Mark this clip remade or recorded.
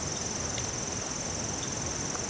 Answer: recorded